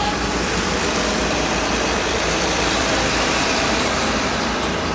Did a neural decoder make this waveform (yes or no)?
yes